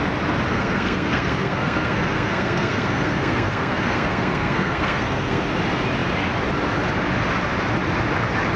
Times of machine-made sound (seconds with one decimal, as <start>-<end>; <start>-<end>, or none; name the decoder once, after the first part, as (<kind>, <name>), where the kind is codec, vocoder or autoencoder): 0.5-5.4 (codec, SNAC)